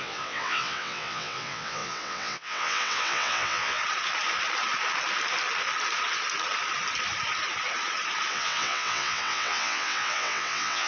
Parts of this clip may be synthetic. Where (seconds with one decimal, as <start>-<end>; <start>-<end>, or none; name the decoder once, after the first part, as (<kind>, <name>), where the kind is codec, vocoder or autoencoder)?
0.0-3.8 (vocoder, WaveNeXt); 8.3-10.9